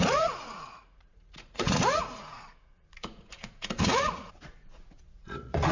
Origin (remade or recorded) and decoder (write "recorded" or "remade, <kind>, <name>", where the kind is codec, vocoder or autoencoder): remade, vocoder, Vocos